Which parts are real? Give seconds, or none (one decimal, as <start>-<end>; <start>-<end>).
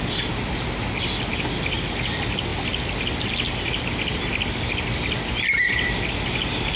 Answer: 0.0-6.8